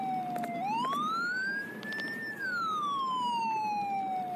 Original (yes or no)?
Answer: yes